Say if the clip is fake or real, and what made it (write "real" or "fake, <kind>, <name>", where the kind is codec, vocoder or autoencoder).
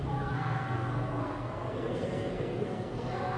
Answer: fake, codec, SNAC